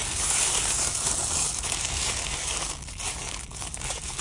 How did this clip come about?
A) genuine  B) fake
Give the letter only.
B